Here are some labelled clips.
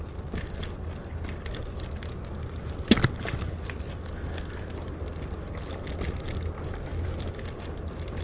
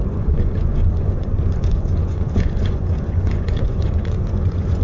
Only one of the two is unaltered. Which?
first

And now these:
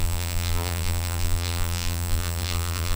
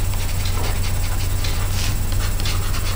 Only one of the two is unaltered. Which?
second